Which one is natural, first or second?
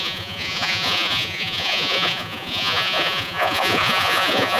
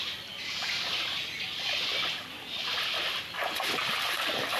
second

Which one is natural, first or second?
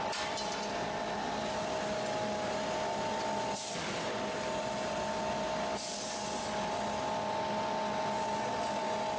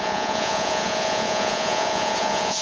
first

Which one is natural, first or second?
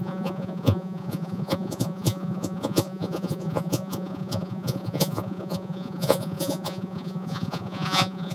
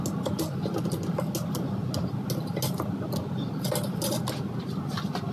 second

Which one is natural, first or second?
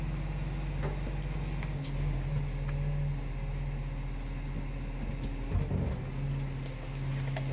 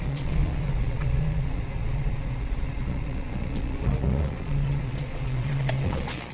first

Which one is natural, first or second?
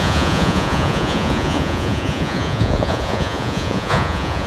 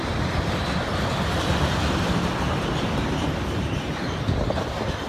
second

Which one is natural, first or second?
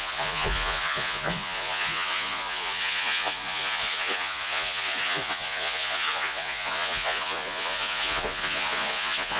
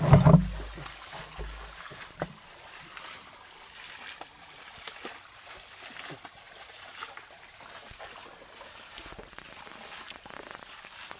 second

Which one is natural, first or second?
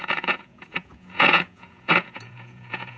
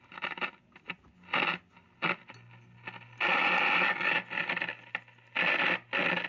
second